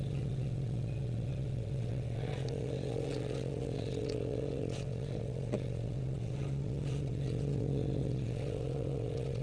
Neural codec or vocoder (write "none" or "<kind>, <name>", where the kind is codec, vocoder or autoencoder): vocoder, WaveNeXt